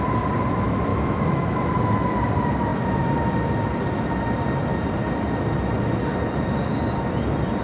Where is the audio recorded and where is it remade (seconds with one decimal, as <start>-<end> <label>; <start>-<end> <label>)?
0.0-0.9 recorded; 0.9-1.6 remade; 1.6-7.6 recorded